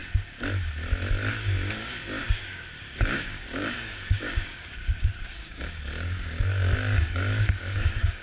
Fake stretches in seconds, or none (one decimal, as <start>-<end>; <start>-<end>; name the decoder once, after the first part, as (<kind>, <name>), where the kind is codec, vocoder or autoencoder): 1.3-8.2 (codec, DAC)

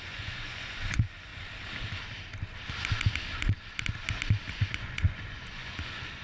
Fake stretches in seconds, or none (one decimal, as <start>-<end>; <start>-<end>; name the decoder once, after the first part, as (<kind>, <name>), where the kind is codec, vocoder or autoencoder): 0.0-1.3 (vocoder, Vocos); 4.5-6.2

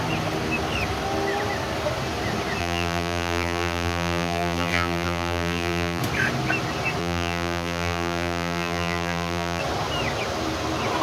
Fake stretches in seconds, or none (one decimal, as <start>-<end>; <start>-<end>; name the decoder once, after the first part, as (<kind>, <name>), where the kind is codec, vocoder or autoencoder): 2.6-6.0 (vocoder, BigVGAN v2); 7.0-9.6

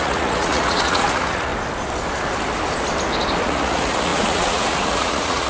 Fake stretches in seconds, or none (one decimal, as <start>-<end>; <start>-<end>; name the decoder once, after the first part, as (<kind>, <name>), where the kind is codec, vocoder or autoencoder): 0.0-1.5 (vocoder, Vocos); 3.4-5.5

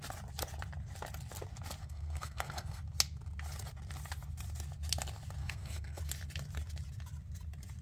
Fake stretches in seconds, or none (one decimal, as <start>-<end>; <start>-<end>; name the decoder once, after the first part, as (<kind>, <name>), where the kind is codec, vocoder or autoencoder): 1.8-2.8 (codec, SNAC); 5.4-6.0

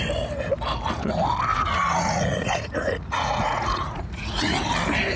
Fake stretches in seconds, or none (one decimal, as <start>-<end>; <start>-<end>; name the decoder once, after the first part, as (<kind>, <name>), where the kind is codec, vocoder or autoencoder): 1.5-4.6 (vocoder, Vocos)